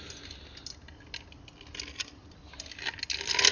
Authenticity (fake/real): real